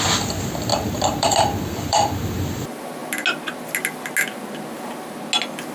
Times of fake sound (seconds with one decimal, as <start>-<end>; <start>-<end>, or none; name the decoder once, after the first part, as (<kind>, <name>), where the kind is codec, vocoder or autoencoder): 0.7-2.6 (vocoder, BigVGAN v2)